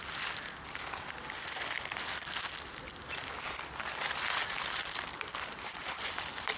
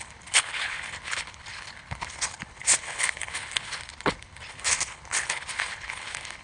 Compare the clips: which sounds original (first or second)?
first